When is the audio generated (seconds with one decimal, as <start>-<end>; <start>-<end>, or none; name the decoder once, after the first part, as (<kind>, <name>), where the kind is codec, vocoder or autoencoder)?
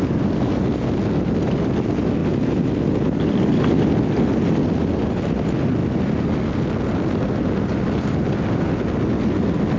none